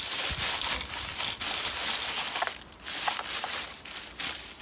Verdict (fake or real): real